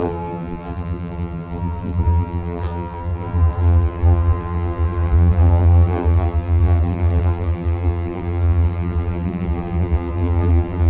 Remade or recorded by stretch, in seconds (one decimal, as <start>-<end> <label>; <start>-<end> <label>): 0.0-10.9 remade